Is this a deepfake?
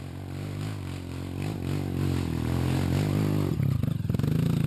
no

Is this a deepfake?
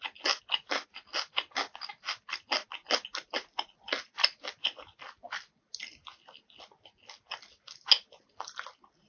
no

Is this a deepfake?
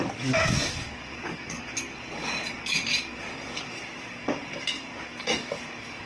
yes